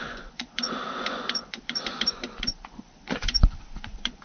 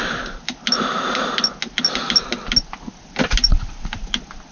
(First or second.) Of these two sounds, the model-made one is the first